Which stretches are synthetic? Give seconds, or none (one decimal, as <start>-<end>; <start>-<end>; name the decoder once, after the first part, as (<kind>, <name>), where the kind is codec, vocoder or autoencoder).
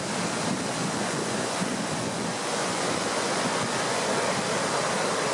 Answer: 0.8-4.0 (vocoder, Vocos)